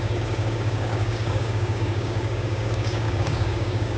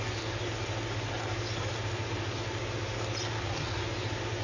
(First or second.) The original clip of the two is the second